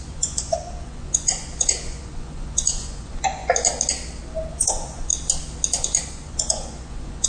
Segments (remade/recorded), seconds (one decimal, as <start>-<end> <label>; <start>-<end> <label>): 0.0-3.4 remade; 3.4-4.5 recorded; 4.5-5.1 remade; 5.1-5.8 recorded; 5.8-7.3 remade